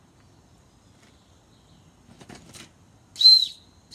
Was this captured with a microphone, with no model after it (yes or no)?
yes